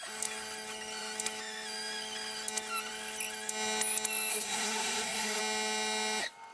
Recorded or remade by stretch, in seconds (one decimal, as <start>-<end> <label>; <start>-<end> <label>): 0.0-4.3 recorded; 4.3-5.4 remade; 5.4-6.5 recorded